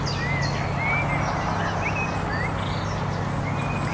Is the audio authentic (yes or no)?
yes